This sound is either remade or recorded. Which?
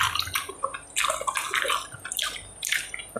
recorded